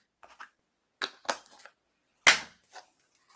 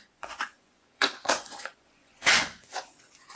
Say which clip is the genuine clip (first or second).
first